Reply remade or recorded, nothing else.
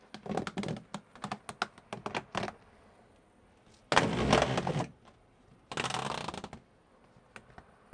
recorded